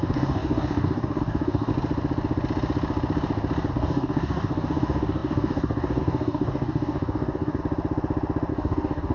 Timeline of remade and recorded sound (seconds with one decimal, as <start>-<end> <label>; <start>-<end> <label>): 0.0-1.7 remade; 1.7-3.7 recorded; 3.7-7.6 remade; 7.6-8.5 recorded; 8.5-9.1 remade